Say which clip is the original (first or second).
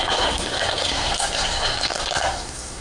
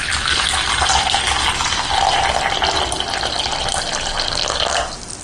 second